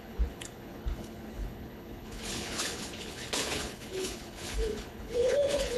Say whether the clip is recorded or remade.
remade